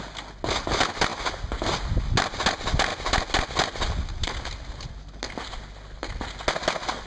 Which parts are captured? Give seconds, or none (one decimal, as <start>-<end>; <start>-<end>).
0.0-7.1